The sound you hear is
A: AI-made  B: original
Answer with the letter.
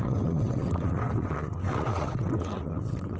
A